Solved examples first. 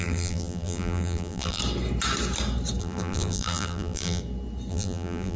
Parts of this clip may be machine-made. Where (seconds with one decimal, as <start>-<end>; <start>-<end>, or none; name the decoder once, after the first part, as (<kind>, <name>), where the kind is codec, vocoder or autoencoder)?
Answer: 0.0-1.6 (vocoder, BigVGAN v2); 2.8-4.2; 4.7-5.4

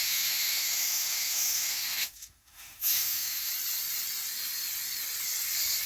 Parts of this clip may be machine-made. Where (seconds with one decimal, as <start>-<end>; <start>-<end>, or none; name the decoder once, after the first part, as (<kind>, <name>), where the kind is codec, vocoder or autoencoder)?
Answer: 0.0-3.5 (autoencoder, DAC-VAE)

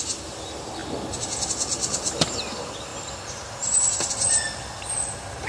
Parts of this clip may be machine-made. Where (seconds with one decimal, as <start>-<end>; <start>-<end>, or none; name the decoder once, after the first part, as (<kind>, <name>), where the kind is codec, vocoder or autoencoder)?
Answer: 2.9-4.1 (vocoder, BigVGAN v2)